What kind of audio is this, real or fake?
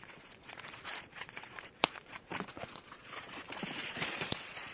fake